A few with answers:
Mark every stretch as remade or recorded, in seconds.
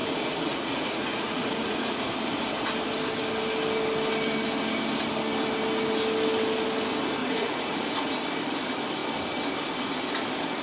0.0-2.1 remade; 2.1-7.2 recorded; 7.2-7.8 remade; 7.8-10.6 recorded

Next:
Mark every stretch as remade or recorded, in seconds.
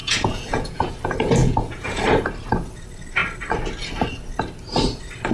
0.0-0.9 remade; 0.9-1.4 recorded; 1.4-2.0 remade; 2.0-5.3 recorded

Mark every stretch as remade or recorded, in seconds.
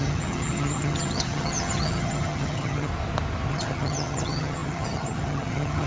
0.0-2.9 remade; 2.9-3.5 recorded; 3.5-5.9 remade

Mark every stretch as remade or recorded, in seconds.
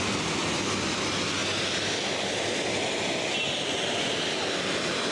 0.0-5.1 recorded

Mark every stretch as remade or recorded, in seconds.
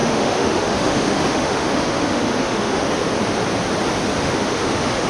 0.0-3.1 remade; 3.1-4.2 recorded; 4.2-5.1 remade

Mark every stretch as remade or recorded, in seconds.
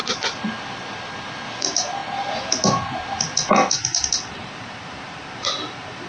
0.0-6.1 recorded